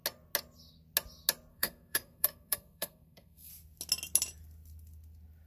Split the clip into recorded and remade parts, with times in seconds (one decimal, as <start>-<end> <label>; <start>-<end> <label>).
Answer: 0.0-1.5 recorded; 1.5-3.5 remade; 3.5-5.5 recorded